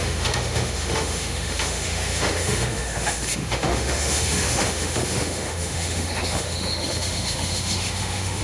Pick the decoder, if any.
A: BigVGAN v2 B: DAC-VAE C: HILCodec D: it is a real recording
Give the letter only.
B